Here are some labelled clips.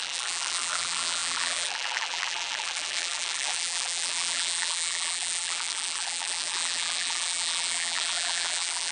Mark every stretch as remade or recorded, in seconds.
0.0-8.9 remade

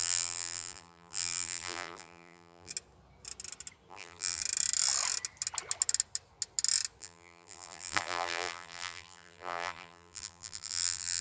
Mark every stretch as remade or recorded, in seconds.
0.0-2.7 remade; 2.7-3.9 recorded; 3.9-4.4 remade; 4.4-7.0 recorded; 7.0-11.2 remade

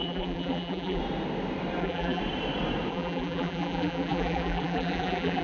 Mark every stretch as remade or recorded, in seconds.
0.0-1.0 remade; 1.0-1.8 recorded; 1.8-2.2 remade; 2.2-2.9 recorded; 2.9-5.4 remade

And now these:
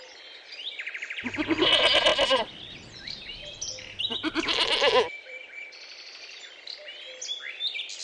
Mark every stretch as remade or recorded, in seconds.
0.0-2.1 recorded; 2.1-6.1 remade; 6.1-8.0 recorded

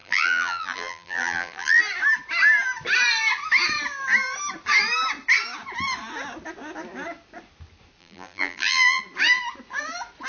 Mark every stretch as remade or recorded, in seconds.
0.0-1.8 remade; 1.8-8.0 recorded; 8.0-9.0 remade; 9.0-10.3 recorded

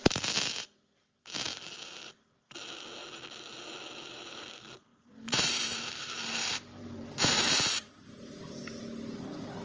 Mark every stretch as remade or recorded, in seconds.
0.0-4.9 recorded; 4.9-8.8 remade; 8.8-9.6 recorded

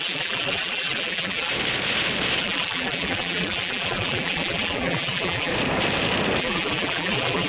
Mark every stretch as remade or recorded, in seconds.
0.0-1.5 remade; 1.5-2.4 recorded; 2.4-5.5 remade; 5.5-6.4 recorded; 6.4-7.5 remade